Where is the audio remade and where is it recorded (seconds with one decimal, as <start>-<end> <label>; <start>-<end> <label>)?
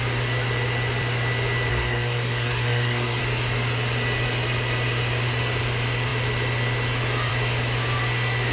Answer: 0.0-1.7 recorded; 1.7-3.2 remade; 3.2-8.5 recorded